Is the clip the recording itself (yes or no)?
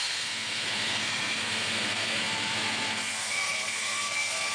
no